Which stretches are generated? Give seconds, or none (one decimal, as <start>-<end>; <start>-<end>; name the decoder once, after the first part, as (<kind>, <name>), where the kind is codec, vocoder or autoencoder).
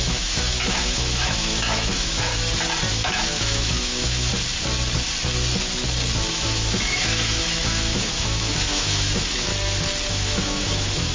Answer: 0.0-2.3 (autoencoder, DAC-VAE); 2.9-4.3; 6.3-9.5; 10.1-11.1